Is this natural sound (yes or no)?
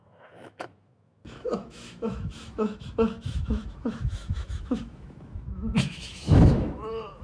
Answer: no